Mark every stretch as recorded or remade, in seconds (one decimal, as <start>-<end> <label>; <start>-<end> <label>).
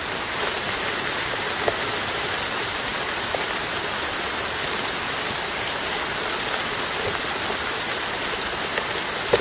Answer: 0.0-9.4 recorded